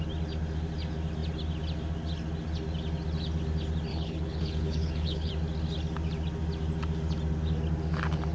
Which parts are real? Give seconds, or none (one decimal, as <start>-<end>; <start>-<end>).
0.0-3.9; 5.3-8.3